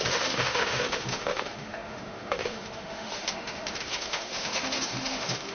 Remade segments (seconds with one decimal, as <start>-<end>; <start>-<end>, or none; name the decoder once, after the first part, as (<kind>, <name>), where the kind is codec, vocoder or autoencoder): 0.0-5.5 (autoencoder, DAC-VAE)